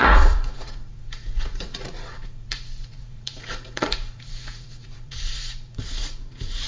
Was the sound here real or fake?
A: fake